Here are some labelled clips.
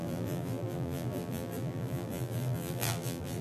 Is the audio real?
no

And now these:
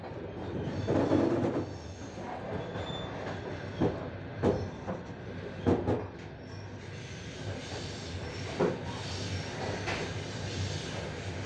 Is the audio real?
yes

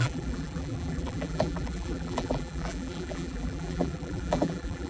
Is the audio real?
no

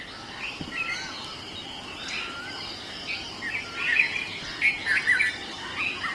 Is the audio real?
yes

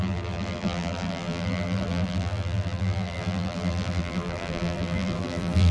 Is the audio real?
no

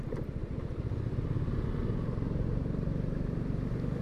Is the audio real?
yes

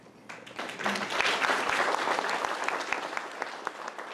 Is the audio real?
yes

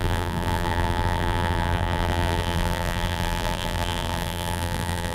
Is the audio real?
no